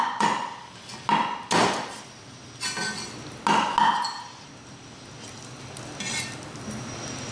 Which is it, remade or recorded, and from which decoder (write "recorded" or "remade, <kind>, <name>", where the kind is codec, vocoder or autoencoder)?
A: recorded